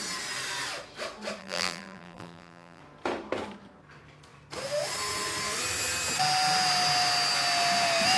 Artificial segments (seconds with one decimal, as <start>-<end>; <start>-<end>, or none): 1.4-2.8